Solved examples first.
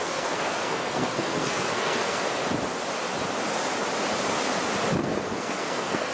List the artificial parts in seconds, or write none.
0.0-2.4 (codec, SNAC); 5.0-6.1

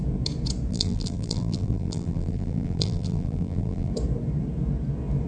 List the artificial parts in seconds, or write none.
0.7-3.9 (vocoder, BigVGAN v2)

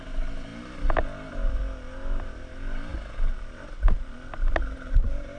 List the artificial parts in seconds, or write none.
none

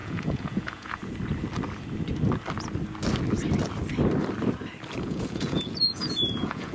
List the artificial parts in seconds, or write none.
0.0-1.0 (vocoder, Vocos); 5.0-6.7